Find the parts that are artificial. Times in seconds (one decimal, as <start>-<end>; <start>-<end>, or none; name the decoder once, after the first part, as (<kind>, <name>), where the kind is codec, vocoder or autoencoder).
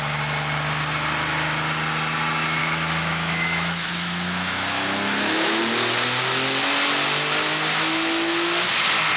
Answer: 2.6-5.6 (autoencoder, DAC-VAE)